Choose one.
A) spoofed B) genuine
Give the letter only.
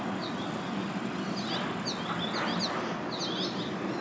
B